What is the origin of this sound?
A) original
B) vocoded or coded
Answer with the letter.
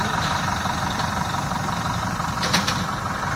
B